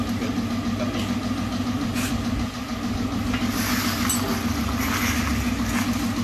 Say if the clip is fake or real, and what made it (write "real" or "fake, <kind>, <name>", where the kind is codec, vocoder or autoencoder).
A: real